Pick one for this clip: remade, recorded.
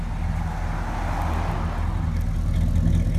recorded